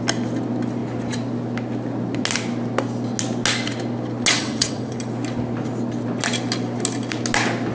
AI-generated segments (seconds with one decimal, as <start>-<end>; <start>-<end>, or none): 4.4-5.0